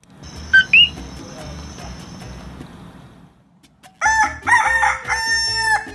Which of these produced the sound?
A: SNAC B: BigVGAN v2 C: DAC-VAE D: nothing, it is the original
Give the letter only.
D